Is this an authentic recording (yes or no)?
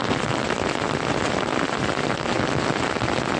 yes